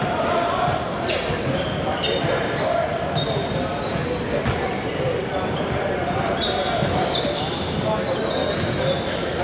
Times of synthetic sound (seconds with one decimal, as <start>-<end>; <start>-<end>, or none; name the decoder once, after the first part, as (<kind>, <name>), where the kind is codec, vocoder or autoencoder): none